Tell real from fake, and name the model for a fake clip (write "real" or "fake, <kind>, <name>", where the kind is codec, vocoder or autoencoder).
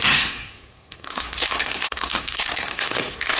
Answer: fake, codec, SNAC